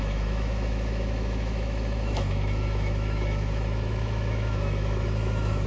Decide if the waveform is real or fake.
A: fake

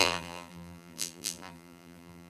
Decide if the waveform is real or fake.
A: fake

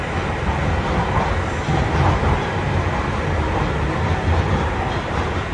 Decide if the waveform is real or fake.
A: real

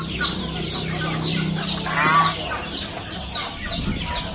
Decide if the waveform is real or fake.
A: real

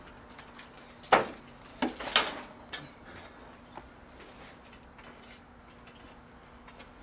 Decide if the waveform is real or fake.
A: real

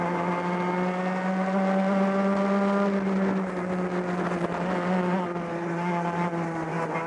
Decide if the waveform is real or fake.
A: real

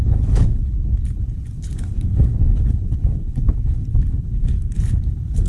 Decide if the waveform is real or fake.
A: fake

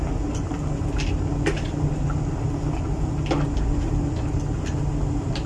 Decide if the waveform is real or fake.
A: real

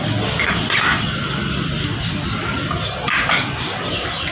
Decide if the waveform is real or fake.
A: real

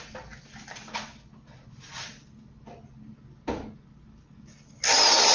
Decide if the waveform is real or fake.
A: real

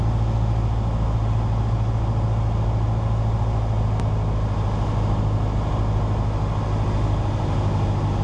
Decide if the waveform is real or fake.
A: real